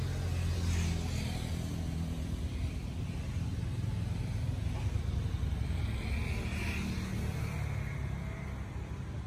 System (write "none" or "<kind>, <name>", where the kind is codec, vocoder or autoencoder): none